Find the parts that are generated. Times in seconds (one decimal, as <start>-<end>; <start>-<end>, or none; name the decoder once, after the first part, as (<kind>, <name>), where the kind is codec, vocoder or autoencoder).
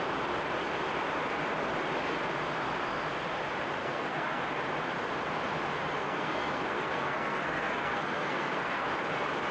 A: 3.8-4.4 (codec, SNAC); 6.0-8.9